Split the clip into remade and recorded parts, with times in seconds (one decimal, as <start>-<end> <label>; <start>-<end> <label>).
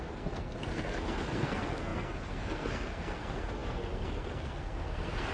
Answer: 0.0-5.3 remade